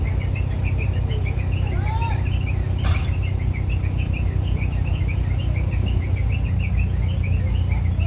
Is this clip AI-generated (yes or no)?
no